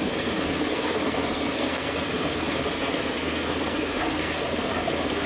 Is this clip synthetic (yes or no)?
yes